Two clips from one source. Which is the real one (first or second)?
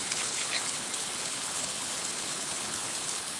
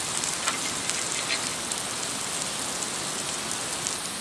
second